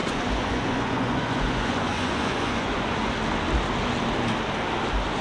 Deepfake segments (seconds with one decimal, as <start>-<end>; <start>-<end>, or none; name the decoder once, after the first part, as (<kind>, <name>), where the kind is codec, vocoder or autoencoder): 0.0-3.1 (vocoder, Vocos)